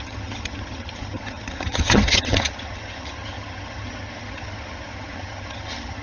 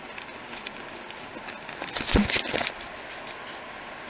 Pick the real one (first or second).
second